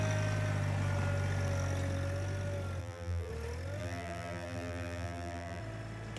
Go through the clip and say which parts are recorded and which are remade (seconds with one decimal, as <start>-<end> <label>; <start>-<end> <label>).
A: 0.0-2.8 recorded; 2.8-3.3 remade; 3.3-3.8 recorded; 3.8-5.6 remade; 5.6-6.2 recorded